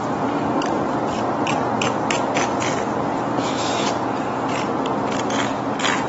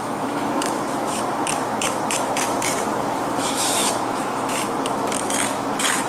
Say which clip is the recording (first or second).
first